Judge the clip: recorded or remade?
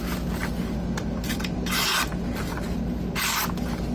recorded